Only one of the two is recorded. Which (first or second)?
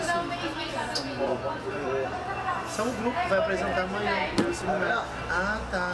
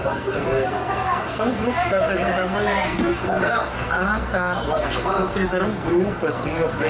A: first